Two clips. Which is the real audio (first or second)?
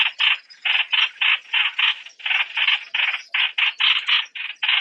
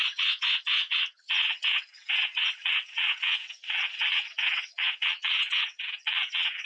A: first